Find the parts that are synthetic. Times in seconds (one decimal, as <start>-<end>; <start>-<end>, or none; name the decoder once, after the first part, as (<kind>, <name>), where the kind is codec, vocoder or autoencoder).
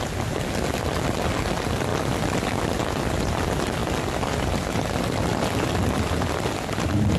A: none